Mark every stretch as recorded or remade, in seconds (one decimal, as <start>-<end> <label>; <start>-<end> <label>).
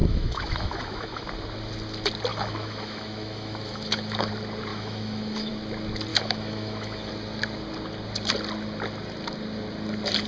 0.0-1.2 remade; 1.2-2.3 recorded; 2.3-4.3 remade; 4.3-4.7 recorded; 4.7-5.5 remade; 5.5-6.1 recorded; 6.1-7.1 remade; 7.1-10.3 recorded